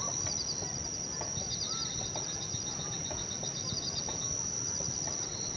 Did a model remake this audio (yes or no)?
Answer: no